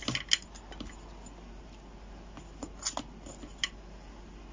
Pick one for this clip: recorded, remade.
recorded